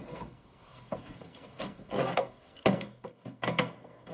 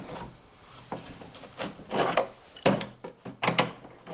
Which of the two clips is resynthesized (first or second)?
first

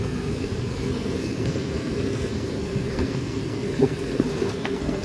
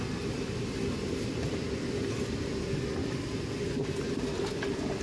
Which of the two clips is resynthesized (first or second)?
first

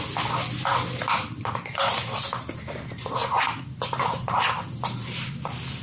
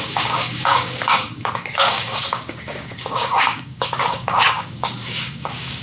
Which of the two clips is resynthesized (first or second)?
second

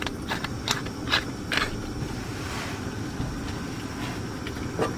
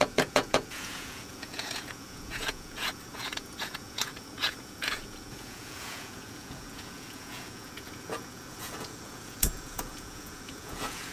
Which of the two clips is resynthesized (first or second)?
second